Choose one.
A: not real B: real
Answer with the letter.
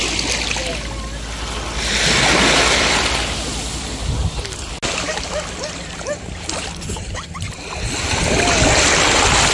B